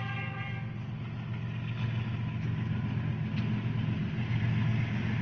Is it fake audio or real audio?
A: real